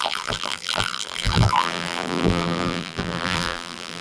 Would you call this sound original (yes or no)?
no